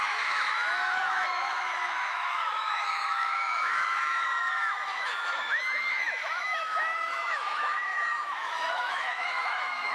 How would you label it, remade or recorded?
remade